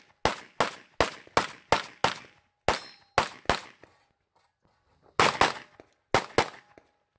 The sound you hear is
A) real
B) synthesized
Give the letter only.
A